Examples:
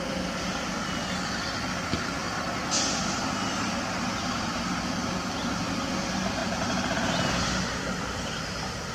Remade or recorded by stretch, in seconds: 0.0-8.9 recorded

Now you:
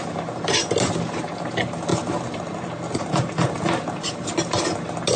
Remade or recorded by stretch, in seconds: 0.0-5.2 recorded